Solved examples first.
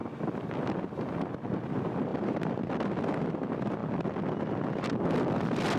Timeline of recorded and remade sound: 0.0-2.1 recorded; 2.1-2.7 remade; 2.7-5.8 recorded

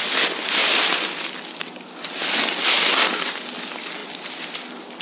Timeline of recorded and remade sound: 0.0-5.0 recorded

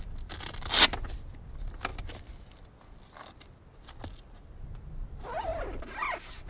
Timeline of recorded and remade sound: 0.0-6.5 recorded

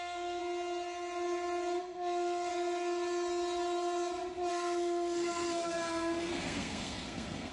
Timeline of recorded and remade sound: 0.0-0.4 remade; 0.4-1.8 recorded; 1.8-2.5 remade; 2.5-4.5 recorded; 4.5-7.5 remade

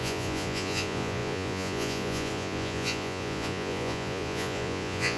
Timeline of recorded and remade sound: 0.0-5.2 remade

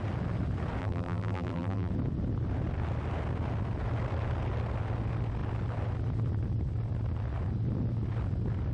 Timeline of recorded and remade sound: 0.0-0.8 recorded; 0.8-1.9 remade; 1.9-8.7 recorded